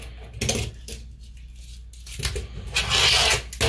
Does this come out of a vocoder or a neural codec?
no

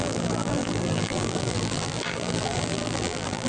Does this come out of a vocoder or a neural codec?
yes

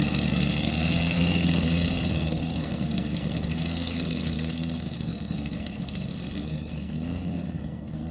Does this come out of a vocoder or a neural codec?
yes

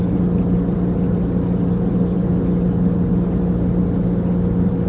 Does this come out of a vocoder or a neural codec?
no